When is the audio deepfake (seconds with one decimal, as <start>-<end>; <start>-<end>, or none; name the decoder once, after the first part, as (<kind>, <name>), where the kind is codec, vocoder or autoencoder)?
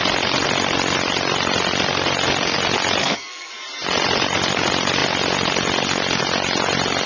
3.0-3.5 (codec, SNAC)